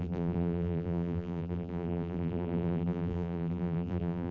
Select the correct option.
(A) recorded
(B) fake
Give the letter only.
B